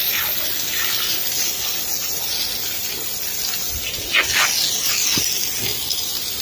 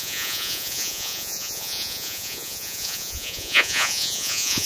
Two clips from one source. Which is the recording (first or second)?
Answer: first